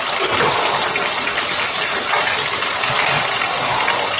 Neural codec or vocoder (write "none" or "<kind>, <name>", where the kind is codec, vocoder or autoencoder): none